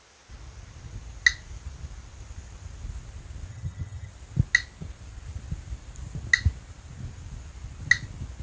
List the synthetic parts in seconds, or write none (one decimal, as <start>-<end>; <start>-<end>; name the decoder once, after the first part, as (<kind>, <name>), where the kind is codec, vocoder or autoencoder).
3.5-4.1 (vocoder, HiFi-GAN)